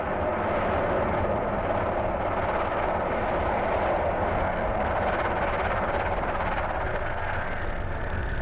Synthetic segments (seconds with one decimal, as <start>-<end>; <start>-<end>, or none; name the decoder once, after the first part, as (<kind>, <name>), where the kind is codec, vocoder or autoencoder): 4.3-4.9 (codec, SNAC); 6.9-8.4